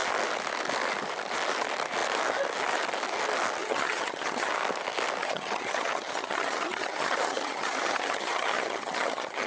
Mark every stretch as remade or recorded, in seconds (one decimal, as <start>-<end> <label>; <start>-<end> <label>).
0.0-3.6 recorded; 3.6-4.5 remade; 4.5-5.2 recorded; 5.2-9.5 remade